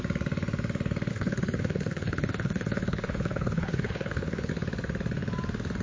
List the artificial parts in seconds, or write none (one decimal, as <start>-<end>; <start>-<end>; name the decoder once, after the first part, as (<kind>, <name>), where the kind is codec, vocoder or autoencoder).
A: 1.1-4.5 (codec, HILCodec)